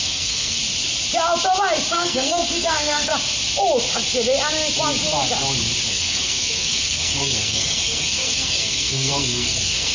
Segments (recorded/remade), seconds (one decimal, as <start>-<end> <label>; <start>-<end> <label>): 0.0-0.6 remade; 0.6-1.9 recorded; 1.9-3.1 remade; 3.1-5.9 recorded; 5.9-9.9 remade